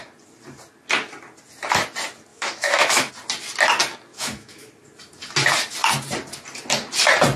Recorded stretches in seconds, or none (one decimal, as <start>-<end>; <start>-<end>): 0.0-2.3; 3.1-4.1; 4.7-7.4